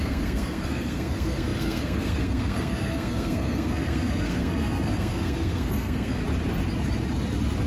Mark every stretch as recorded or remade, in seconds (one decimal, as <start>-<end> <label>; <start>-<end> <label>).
0.0-6.2 remade; 6.2-7.7 recorded